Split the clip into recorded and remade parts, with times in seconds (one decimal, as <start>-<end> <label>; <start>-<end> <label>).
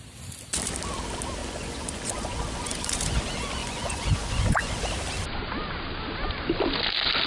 0.0-1.4 recorded; 1.4-3.2 remade; 3.2-3.6 recorded; 3.6-4.8 remade; 4.8-7.3 recorded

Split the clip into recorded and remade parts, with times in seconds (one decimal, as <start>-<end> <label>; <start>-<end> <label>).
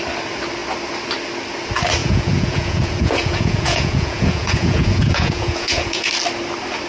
0.0-2.0 recorded; 2.0-6.1 remade; 6.1-6.9 recorded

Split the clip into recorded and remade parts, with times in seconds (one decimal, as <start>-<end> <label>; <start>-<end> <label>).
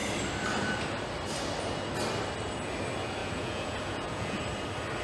0.0-3.2 recorded; 3.2-4.4 remade; 4.4-5.0 recorded